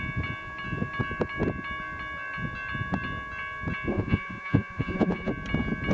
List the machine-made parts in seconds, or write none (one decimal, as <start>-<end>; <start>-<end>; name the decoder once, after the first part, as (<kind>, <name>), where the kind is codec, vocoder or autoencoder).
3.9-5.3 (vocoder, Vocos)